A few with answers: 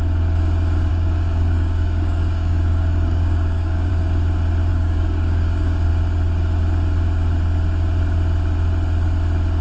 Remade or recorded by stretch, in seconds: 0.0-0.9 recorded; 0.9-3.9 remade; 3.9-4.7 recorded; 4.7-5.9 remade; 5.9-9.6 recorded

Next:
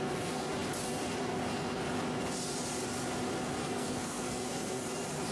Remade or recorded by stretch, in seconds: 0.0-3.6 recorded; 3.6-4.8 remade; 4.8-5.3 recorded

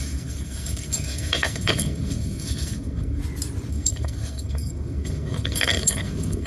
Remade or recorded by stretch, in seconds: 0.0-3.2 remade; 3.2-3.7 recorded; 3.7-6.5 remade

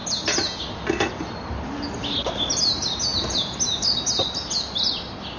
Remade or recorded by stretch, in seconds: 0.0-5.4 recorded

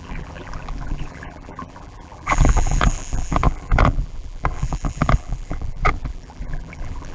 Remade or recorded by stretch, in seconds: 0.0-7.1 remade

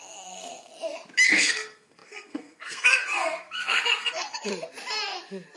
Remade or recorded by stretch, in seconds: 0.0-0.7 remade; 0.7-1.3 recorded; 1.3-4.5 remade; 4.5-5.6 recorded